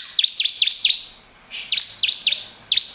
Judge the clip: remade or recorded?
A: recorded